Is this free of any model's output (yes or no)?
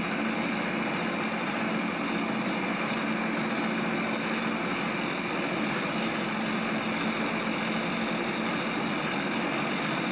yes